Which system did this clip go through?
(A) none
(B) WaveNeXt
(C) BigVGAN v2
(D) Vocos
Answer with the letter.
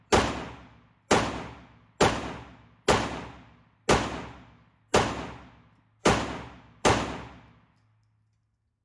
A